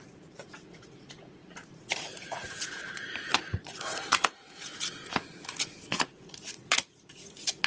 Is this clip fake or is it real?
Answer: fake